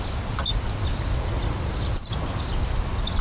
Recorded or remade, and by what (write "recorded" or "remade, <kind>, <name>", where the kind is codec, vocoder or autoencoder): recorded